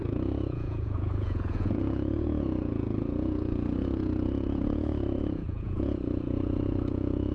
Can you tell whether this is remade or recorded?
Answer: remade